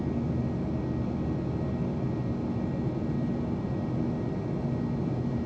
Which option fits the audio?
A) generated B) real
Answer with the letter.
B